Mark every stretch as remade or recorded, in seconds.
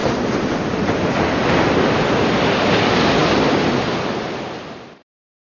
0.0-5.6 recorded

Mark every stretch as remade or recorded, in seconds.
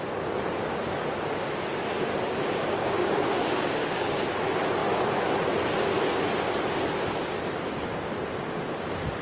0.0-2.1 recorded; 2.1-4.2 remade; 4.2-9.2 recorded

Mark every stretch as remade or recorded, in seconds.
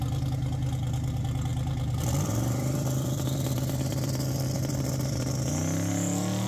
0.0-1.5 recorded; 1.5-5.4 remade; 5.4-6.5 recorded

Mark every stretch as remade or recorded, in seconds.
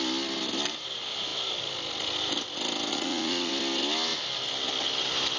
0.0-2.9 recorded; 2.9-3.5 remade; 3.5-5.4 recorded